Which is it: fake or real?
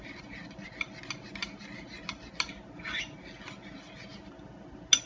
real